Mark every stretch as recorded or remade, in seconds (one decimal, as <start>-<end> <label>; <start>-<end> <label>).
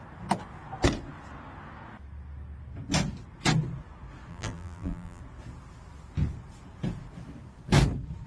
0.0-4.3 recorded; 4.3-5.2 remade; 5.2-8.3 recorded